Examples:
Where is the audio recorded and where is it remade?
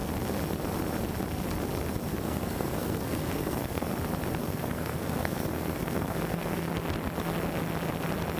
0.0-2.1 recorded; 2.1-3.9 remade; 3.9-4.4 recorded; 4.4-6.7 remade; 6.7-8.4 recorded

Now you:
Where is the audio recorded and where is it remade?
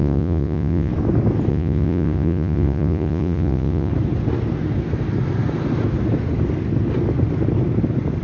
0.0-0.9 remade; 0.9-1.5 recorded; 1.5-3.9 remade; 3.9-8.2 recorded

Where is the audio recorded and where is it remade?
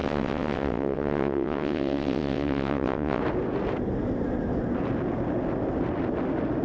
0.0-3.2 remade; 3.2-6.6 recorded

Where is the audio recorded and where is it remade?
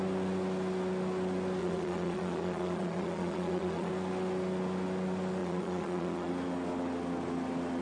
0.0-1.6 recorded; 1.6-3.9 remade; 3.9-5.4 recorded; 5.4-6.3 remade; 6.3-7.8 recorded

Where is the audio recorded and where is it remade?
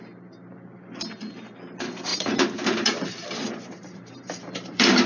0.0-2.1 recorded; 2.1-5.1 remade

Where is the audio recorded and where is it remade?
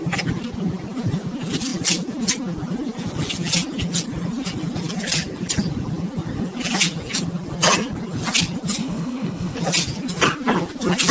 0.0-8.8 recorded; 8.8-9.6 remade; 9.6-11.1 recorded